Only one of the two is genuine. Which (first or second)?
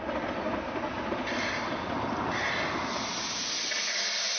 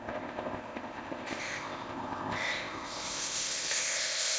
first